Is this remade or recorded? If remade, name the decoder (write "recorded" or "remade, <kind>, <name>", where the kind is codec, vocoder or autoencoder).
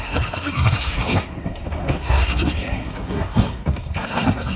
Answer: remade, codec, SNAC